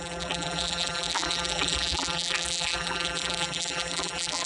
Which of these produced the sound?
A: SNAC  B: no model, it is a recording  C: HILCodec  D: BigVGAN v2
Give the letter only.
D